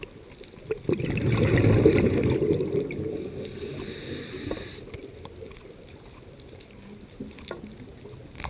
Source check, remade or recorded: recorded